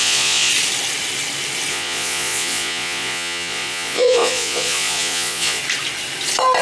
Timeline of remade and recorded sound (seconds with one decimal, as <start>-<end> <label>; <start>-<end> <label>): 0.0-0.5 remade; 0.5-1.7 recorded; 1.7-5.6 remade; 5.6-6.6 recorded